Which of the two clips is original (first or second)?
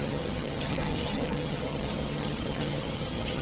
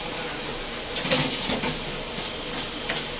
second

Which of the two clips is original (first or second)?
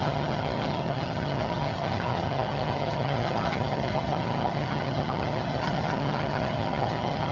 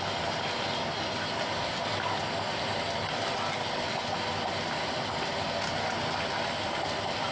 second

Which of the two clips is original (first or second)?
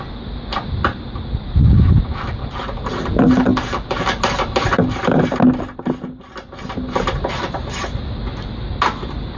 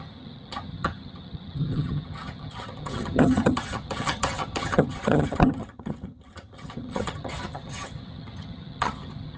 first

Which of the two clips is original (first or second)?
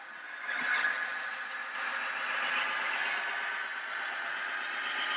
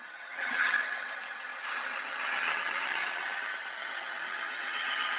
first